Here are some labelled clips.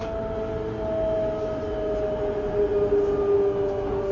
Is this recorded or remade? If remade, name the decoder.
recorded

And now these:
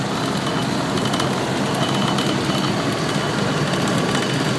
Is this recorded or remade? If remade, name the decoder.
recorded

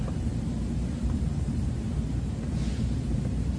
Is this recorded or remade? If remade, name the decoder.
remade, vocoder, BigVGAN v2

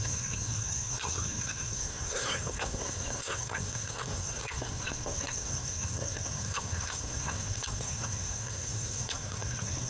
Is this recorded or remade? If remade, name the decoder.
remade, codec, SNAC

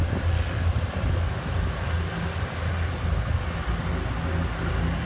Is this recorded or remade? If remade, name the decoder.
recorded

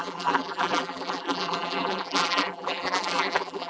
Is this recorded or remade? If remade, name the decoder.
remade, vocoder, BigVGAN v2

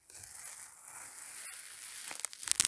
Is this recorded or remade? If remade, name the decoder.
recorded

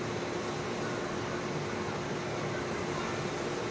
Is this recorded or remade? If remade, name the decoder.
recorded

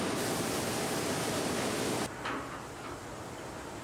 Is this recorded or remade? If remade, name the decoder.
recorded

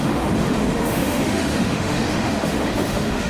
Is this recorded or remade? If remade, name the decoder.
remade, autoencoder, DAC-VAE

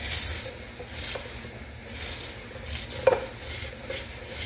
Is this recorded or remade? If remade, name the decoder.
recorded